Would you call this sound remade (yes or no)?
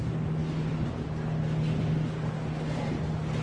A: no